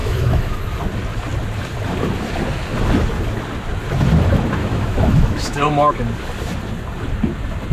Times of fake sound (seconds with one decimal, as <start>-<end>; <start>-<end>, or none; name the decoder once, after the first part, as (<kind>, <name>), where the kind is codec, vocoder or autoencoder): 0.0-0.6 (autoencoder, DAC-VAE); 4.6-5.9